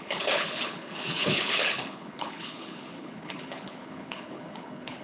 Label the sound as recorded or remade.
remade